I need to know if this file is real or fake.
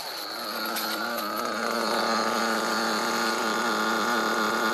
real